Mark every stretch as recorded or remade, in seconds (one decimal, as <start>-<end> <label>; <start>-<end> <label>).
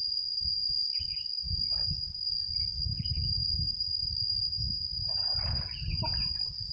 0.0-0.8 recorded; 0.8-4.5 remade; 4.5-6.7 recorded